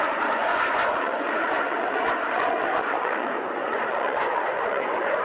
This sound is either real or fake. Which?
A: fake